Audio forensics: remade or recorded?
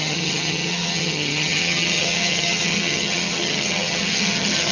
remade